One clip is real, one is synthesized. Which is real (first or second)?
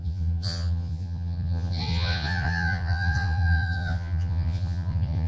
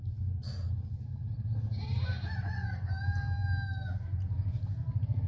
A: second